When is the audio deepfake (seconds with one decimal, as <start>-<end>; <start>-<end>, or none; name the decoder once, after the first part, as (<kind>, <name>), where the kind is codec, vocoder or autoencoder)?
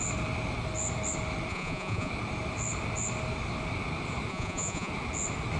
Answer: 1.5-2.1 (vocoder, Vocos); 4.3-4.9